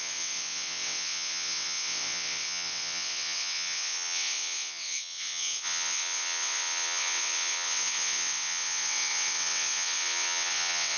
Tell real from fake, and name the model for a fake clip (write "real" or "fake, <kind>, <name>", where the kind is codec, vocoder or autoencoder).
fake, vocoder, WaveNeXt